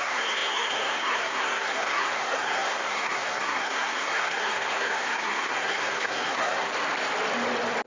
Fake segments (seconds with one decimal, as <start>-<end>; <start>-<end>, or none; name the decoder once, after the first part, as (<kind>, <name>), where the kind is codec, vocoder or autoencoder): 0.0-6.7 (codec, SNAC)